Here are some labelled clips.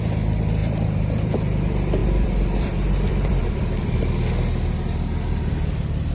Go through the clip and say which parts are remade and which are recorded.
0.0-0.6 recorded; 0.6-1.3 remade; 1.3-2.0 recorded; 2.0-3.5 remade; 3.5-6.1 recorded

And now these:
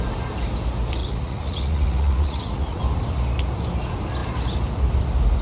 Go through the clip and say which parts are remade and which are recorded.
0.0-1.0 recorded; 1.0-2.8 remade; 2.8-5.4 recorded

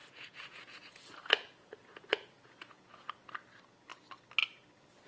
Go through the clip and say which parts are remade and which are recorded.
0.0-3.1 remade; 3.1-5.1 recorded

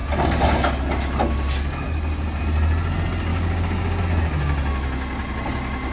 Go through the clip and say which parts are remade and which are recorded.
0.0-3.3 recorded; 3.3-4.0 remade; 4.0-5.9 recorded

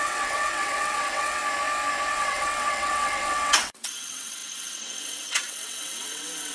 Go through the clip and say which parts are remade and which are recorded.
0.0-1.4 remade; 1.4-2.1 recorded; 2.1-6.5 remade